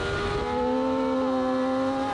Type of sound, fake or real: real